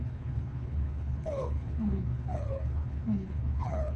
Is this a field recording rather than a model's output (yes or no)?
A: no